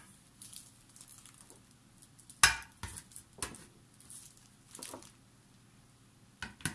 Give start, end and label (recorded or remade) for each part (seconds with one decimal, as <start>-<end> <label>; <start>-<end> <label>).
0.0-6.7 recorded